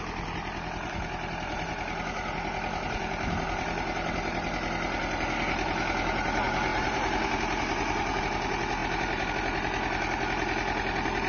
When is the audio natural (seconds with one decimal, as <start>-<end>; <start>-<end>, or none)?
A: 0.0-6.7; 8.2-11.3